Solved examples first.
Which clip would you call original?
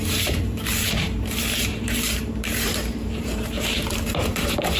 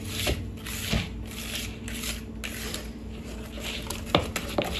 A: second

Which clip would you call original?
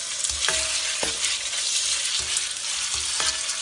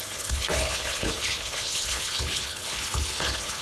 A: first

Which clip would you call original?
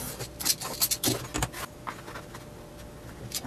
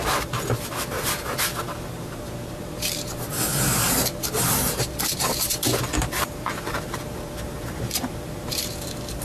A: first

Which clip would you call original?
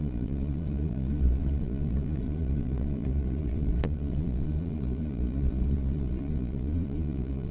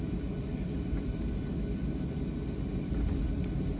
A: second